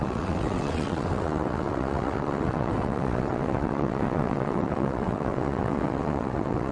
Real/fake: fake